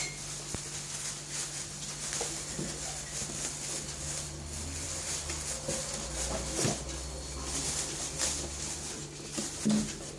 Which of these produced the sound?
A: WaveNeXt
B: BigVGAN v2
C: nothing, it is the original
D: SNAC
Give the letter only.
C